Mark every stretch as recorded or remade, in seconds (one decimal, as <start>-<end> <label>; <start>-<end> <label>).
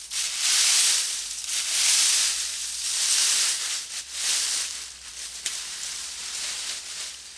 0.0-7.4 recorded